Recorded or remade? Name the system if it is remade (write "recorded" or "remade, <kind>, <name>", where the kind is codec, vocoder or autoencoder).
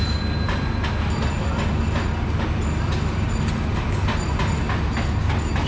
recorded